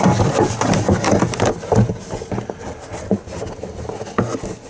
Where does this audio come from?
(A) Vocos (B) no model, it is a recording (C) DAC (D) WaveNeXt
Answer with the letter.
B